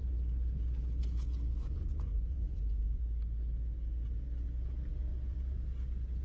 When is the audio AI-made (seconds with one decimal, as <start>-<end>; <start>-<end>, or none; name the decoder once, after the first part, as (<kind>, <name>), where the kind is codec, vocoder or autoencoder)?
1.5-3.0 (vocoder, Vocos)